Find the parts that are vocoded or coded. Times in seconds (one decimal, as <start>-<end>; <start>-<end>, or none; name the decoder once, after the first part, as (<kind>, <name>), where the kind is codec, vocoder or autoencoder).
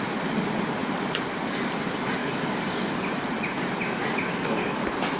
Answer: 2.2-3.0 (codec, DAC); 4.3-4.8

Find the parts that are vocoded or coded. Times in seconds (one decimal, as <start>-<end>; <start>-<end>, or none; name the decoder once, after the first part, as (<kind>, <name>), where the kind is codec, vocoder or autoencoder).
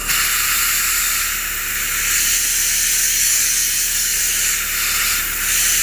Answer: 3.0-4.2 (codec, DAC)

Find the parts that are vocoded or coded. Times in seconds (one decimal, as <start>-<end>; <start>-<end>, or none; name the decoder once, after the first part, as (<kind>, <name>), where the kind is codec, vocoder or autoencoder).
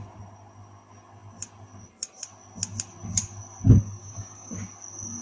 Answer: 4.0-4.5 (codec, DAC)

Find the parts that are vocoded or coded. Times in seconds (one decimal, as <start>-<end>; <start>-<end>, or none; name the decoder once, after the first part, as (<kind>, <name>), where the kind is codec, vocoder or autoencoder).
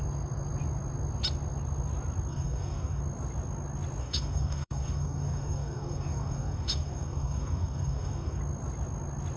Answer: 2.3-3.0 (codec, DAC); 4.0-8.4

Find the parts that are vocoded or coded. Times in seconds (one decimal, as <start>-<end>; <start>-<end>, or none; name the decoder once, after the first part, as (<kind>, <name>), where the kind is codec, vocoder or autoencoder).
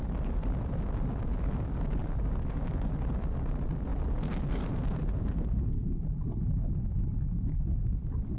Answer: none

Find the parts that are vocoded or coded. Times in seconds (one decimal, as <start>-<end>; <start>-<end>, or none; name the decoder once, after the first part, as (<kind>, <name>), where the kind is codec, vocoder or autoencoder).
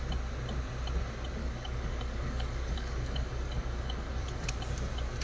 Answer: 1.4-4.5 (codec, DAC)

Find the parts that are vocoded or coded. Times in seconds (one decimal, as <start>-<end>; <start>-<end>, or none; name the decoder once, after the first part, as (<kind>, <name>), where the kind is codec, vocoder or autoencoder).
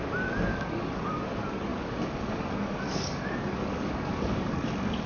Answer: 0.5-1.2 (codec, DAC); 1.7-5.1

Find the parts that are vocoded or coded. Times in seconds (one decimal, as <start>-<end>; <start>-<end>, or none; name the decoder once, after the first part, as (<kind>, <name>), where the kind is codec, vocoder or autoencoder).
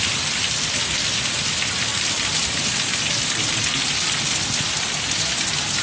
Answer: none